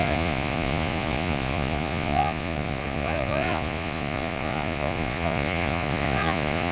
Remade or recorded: remade